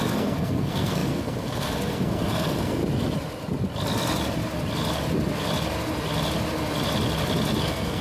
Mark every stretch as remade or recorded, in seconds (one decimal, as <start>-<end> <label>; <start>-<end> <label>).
0.0-2.8 remade; 2.8-7.6 recorded; 7.6-8.0 remade